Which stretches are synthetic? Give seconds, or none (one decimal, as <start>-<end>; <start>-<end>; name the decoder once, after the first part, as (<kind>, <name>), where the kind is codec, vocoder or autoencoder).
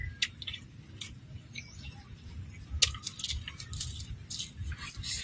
none